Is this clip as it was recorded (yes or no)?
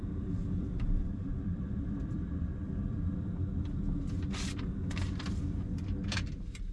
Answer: no